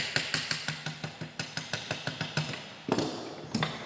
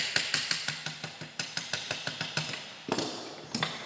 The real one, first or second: first